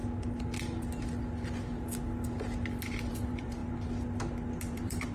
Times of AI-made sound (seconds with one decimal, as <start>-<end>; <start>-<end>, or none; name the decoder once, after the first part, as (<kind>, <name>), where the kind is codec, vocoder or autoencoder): 3.1-3.6 (vocoder, BigVGAN v2); 4.6-5.1